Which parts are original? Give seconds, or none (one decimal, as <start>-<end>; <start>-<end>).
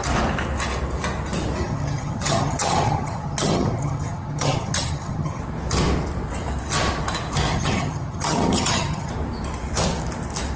0.0-1.6; 5.4-7.5; 9.1-10.6